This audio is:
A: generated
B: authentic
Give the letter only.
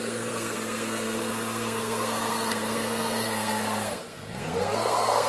A